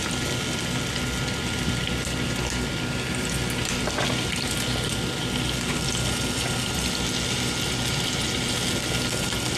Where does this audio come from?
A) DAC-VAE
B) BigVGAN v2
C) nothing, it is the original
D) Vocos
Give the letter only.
C